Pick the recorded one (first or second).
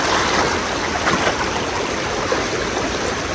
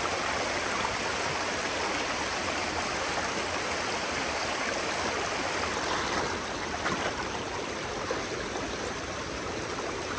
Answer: first